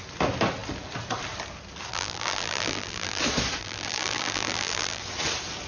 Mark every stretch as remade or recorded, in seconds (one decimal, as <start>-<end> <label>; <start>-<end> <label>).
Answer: 0.0-1.9 recorded; 1.9-3.2 remade; 3.2-3.6 recorded; 3.6-5.0 remade; 5.0-5.7 recorded